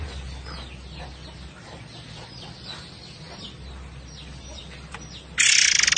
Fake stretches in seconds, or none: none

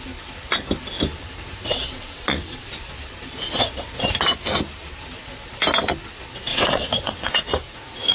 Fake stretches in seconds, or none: 1.7-2.7 (vocoder, WaveNeXt); 6.5-7.4

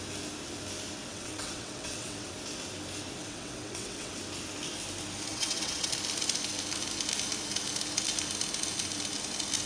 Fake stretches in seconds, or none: 1.1-2.3 (vocoder, WaveNeXt); 3.2-4.1; 5.3-5.9

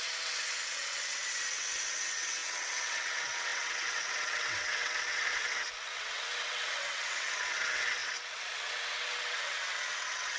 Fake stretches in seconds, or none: 0.0-10.4 (vocoder, WaveNeXt)